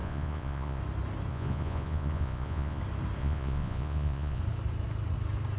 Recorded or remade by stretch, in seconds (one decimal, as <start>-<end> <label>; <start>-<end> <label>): 0.0-0.8 remade; 0.8-1.3 recorded; 1.3-2.8 remade; 2.8-3.2 recorded; 3.2-4.4 remade; 4.4-5.6 recorded